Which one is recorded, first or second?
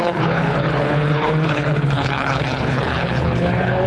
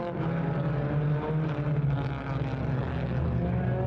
second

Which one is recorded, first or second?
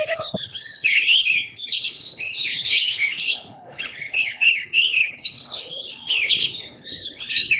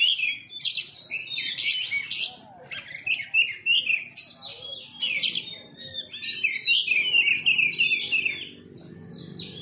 second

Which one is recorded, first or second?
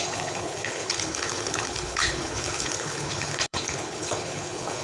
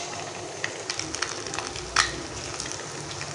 second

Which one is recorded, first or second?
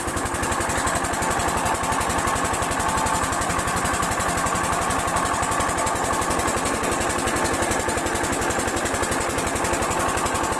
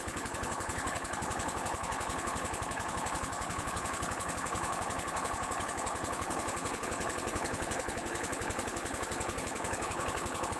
first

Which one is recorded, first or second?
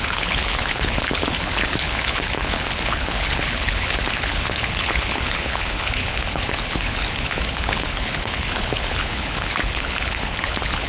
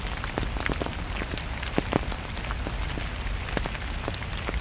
second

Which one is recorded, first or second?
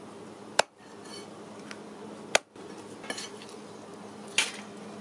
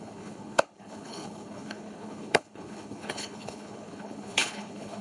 first